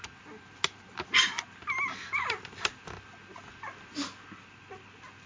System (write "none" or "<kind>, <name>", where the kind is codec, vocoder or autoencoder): none